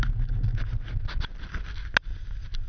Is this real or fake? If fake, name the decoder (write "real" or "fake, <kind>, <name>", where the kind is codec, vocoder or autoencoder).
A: real